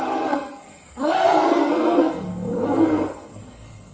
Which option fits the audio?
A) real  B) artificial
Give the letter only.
B